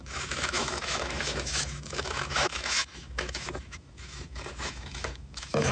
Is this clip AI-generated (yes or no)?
yes